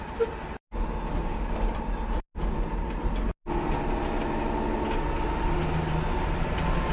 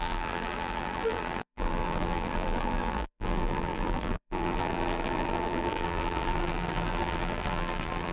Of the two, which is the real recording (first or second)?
first